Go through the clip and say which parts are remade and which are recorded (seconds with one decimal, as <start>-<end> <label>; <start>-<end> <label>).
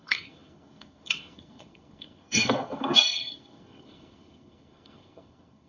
0.0-5.7 remade